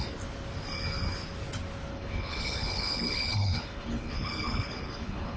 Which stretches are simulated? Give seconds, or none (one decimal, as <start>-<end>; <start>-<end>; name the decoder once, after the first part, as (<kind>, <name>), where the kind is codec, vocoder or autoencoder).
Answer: 1.9-5.4 (codec, HILCodec)